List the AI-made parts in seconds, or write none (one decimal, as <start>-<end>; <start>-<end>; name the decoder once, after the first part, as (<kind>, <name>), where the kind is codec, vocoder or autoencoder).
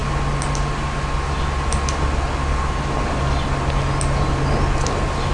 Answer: none